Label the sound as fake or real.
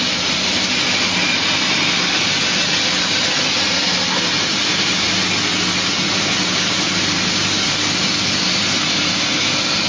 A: real